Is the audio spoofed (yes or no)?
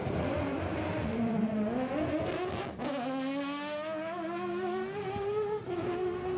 no